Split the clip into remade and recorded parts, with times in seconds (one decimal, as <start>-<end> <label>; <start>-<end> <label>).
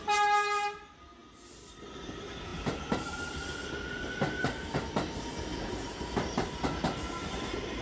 0.0-2.5 recorded; 2.5-3.1 remade; 3.1-5.5 recorded; 5.5-6.5 remade; 6.5-7.8 recorded